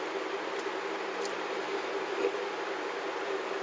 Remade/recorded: recorded